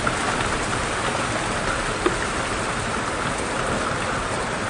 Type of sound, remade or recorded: recorded